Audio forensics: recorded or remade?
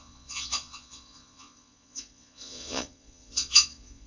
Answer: remade